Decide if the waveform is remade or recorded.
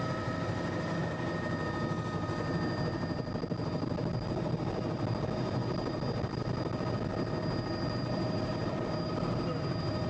remade